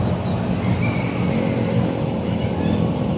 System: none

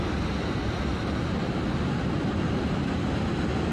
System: none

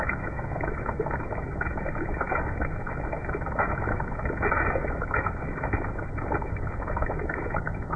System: autoencoder, DAC-VAE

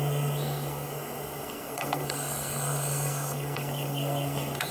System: codec, SNAC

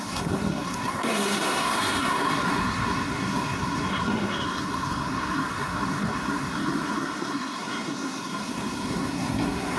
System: codec, SNAC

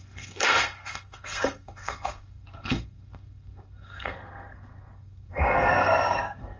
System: codec, SNAC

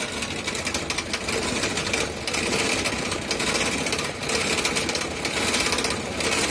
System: none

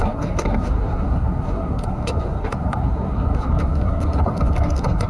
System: codec, SNAC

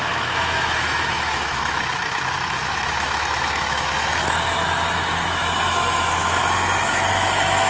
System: autoencoder, DAC-VAE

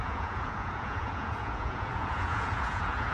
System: vocoder, Vocos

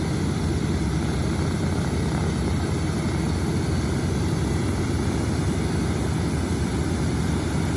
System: none